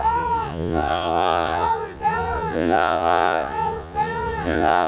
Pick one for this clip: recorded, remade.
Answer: remade